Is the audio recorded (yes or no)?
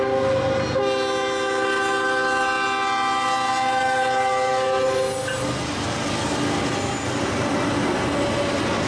yes